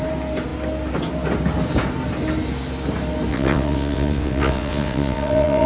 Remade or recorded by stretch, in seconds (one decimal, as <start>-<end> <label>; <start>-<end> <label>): 0.0-3.3 recorded; 3.3-5.7 remade